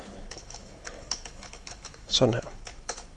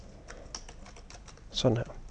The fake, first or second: first